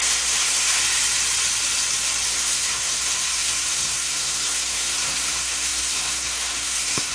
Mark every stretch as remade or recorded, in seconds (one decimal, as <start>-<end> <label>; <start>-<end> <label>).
0.0-0.8 remade; 0.8-2.3 recorded; 2.3-7.1 remade